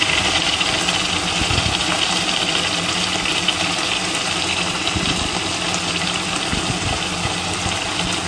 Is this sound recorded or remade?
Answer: recorded